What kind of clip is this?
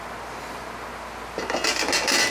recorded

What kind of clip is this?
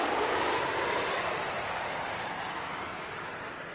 remade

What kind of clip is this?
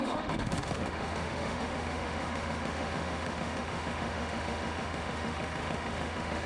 remade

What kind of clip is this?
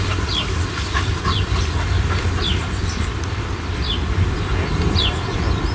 recorded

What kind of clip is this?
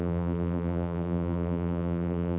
remade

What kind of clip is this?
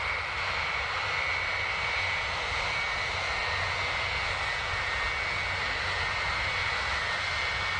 recorded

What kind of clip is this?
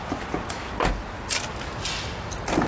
recorded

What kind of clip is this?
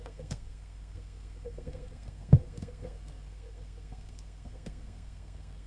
remade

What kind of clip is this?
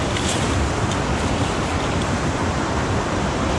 remade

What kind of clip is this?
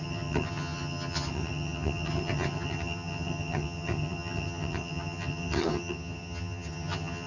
remade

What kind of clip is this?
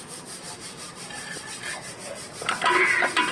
remade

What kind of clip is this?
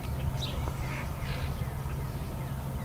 recorded